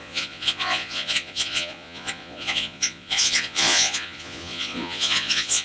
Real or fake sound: fake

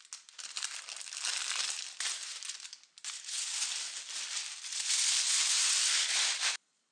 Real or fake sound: real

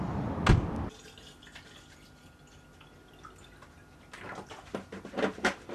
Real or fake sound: real